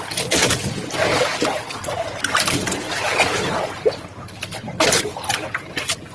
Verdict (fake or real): real